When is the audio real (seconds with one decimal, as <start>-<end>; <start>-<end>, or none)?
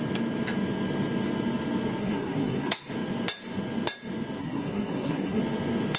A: 0.0-2.0; 2.9-4.4; 5.4-6.0